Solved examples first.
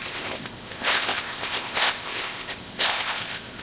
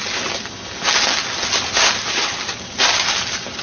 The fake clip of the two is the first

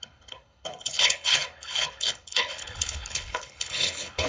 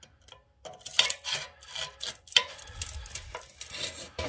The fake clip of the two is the first